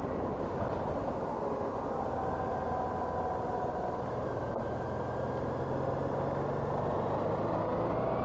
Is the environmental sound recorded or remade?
recorded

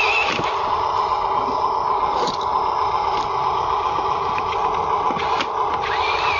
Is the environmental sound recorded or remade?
recorded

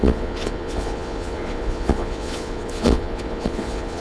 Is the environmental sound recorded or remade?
remade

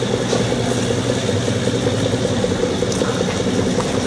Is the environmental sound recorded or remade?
recorded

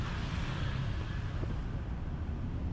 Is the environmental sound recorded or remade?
recorded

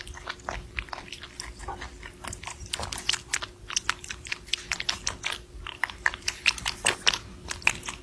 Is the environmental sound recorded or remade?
recorded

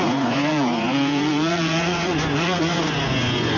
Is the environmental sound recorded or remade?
remade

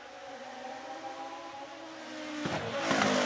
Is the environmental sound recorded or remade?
recorded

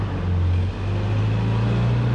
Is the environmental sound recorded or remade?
recorded